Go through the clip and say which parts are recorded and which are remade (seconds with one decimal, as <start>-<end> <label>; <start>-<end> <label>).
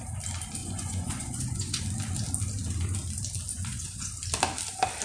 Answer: 0.0-0.6 recorded; 0.6-1.8 remade; 1.8-3.5 recorded; 3.5-4.1 remade; 4.1-5.0 recorded